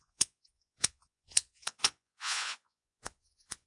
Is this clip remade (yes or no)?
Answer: yes